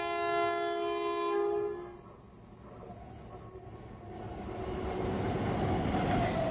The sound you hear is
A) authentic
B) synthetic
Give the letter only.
A